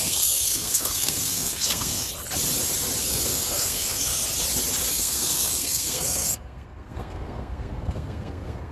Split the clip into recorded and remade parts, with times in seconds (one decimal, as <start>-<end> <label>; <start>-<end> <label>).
0.0-2.1 remade; 2.1-3.0 recorded; 3.0-4.2 remade; 4.2-4.9 recorded; 4.9-8.7 remade